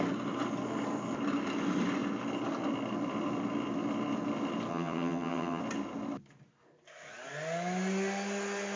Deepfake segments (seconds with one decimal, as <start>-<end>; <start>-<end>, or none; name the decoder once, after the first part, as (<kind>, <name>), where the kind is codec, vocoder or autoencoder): 4.7-5.6 (vocoder, HiFi-GAN)